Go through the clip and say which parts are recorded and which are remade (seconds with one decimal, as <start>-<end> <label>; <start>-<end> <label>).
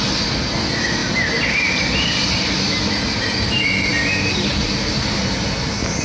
0.0-6.0 recorded